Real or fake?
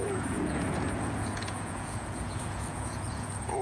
fake